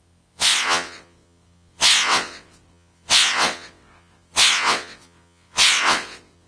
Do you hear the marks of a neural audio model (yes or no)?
yes